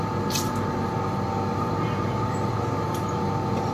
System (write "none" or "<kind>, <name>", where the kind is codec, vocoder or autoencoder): vocoder, BigVGAN v2